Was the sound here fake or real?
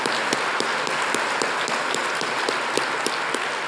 real